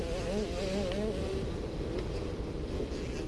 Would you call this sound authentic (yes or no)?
yes